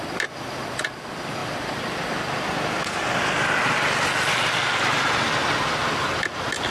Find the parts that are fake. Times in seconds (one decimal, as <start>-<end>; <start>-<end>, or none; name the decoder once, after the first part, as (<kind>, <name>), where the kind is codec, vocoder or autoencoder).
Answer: none